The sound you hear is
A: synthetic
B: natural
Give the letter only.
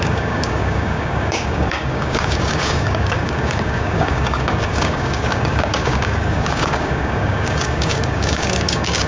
A